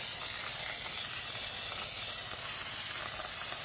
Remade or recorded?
recorded